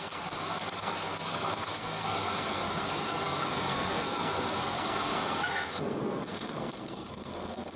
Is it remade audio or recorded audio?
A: remade